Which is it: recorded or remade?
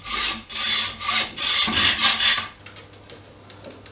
remade